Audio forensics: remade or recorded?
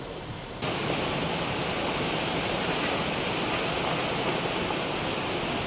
recorded